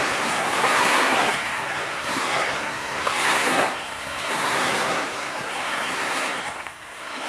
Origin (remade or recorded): remade